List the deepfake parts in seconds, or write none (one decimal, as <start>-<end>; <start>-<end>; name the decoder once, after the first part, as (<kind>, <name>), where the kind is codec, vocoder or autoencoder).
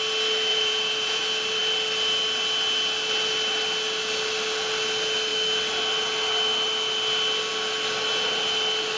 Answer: 0.5-1.2 (vocoder, Vocos)